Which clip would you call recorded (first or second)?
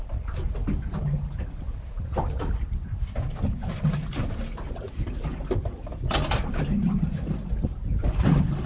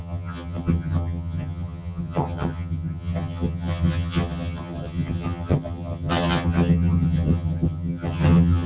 first